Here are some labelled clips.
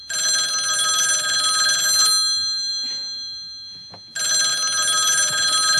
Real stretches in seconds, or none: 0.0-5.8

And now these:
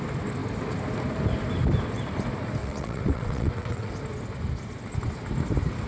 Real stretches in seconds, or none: 0.0-2.6; 3.9-5.9

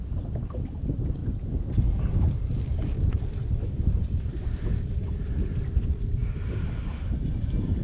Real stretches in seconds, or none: 0.0-2.7; 4.1-7.8

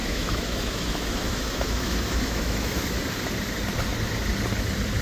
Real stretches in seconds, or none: 3.0-5.0

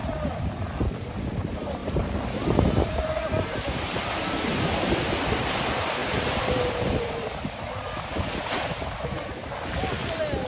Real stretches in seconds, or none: 0.0-1.8; 3.0-6.0; 7.4-10.5

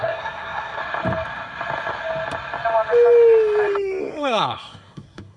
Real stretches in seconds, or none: 0.8-4.0

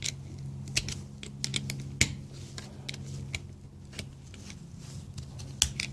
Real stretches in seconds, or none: 0.0-5.9